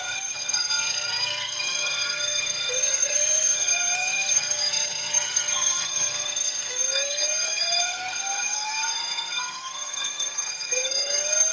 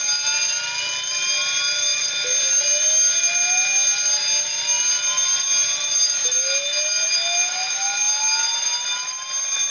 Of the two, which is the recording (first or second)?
second